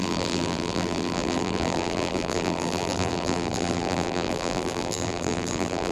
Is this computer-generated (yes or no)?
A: yes